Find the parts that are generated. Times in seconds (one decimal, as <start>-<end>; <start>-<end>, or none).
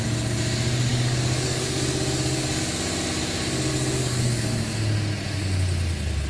0.9-2.6; 3.7-4.8